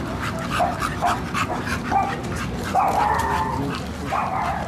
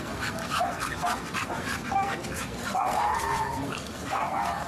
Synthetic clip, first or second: second